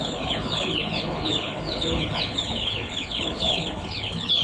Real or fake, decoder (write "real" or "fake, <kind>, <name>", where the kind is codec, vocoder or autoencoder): fake, codec, HILCodec